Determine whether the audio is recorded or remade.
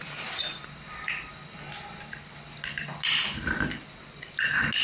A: recorded